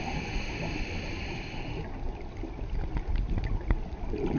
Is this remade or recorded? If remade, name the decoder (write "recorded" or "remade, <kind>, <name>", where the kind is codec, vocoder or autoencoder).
recorded